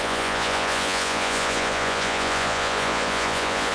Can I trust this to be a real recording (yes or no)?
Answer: no